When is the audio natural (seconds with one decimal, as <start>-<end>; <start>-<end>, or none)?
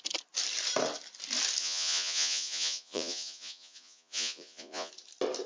0.0-1.6; 4.9-5.5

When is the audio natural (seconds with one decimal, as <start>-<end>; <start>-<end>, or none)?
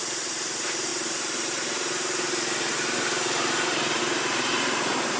none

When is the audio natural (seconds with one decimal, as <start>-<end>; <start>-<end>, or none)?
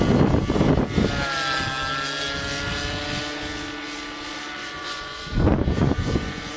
0.0-4.6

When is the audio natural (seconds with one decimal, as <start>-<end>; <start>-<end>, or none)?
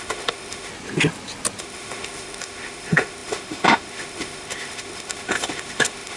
0.7-1.6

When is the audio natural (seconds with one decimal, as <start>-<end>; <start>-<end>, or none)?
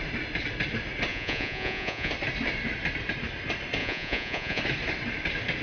0.0-1.1; 2.1-3.8; 4.6-5.6